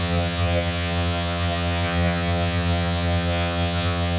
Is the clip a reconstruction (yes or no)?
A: yes